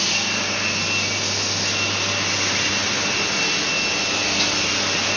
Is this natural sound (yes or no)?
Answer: yes